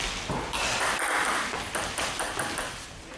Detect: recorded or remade recorded